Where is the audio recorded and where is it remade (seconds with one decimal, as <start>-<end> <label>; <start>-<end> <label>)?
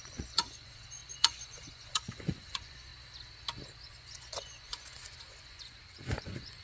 0.0-2.9 remade; 2.9-3.8 recorded; 3.8-6.6 remade